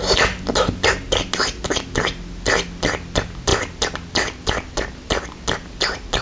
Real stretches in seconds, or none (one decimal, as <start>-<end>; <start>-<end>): 0.0-6.2